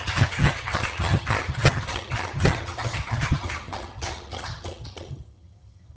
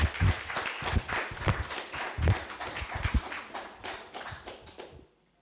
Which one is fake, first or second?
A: first